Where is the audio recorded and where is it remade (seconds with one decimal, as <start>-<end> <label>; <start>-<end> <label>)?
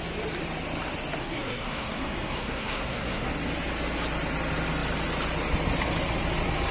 0.0-1.2 recorded; 1.2-3.3 remade; 3.3-6.7 recorded